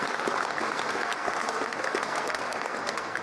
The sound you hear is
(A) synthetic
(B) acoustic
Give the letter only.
A